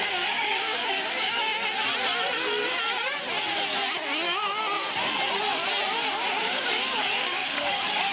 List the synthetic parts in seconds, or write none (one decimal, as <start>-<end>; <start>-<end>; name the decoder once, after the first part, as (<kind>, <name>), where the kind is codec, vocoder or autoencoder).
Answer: 0.0-1.5 (codec, DAC); 6.4-8.1